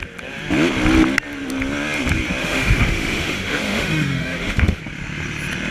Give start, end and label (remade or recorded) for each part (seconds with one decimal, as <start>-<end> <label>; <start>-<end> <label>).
0.0-2.4 recorded; 2.4-4.8 remade; 4.8-5.7 recorded